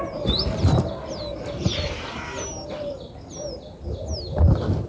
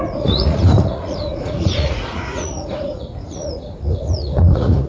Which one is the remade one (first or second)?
second